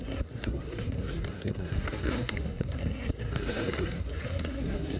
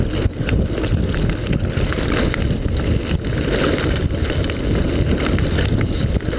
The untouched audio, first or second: second